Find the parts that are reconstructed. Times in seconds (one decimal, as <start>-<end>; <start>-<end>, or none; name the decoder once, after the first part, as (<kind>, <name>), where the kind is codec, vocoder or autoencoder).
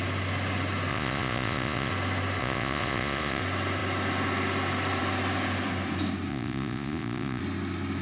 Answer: 0.9-1.9 (vocoder, Vocos); 2.4-3.4; 6.3-7.4